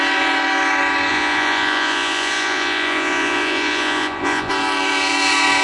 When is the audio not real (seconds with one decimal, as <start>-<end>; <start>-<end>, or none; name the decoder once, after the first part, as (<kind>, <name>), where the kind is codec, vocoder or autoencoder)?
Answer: 1.1-4.5 (vocoder, Vocos)